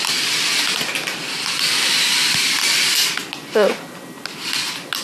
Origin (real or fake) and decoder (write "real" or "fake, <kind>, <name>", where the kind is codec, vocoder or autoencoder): real